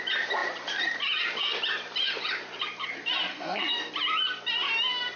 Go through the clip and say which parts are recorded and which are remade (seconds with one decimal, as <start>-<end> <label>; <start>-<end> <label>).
0.0-3.3 recorded; 3.3-3.9 remade; 3.9-5.2 recorded

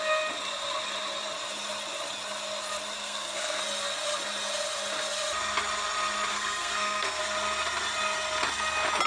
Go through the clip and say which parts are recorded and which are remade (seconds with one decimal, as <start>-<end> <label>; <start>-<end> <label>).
0.0-3.0 recorded; 3.0-3.6 remade; 3.6-6.3 recorded; 6.3-7.2 remade; 7.2-9.1 recorded

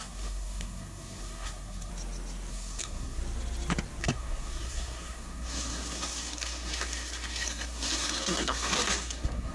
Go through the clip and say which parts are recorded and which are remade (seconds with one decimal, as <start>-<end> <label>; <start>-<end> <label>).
0.0-1.9 remade; 1.9-2.5 recorded; 2.5-3.2 remade; 3.2-4.0 recorded; 4.0-9.5 remade

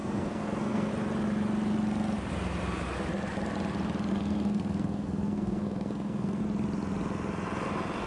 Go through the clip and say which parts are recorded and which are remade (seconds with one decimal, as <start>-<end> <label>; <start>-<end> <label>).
0.0-0.9 remade; 0.9-4.1 recorded; 4.1-6.4 remade; 6.4-8.1 recorded

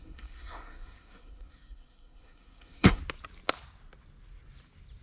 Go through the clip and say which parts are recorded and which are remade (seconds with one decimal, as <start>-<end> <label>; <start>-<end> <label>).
0.0-3.0 remade; 3.0-5.0 recorded

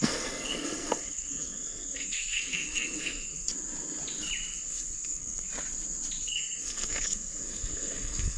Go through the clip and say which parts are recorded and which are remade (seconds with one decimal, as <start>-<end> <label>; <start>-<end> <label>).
0.0-3.5 remade; 3.5-4.5 recorded; 4.5-5.5 remade; 5.5-6.2 recorded; 6.2-8.4 remade